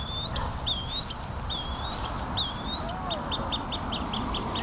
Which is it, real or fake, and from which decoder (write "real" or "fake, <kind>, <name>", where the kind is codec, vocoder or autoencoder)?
real